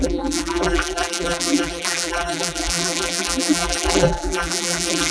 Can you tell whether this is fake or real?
fake